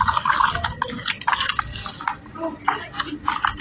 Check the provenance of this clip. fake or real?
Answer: real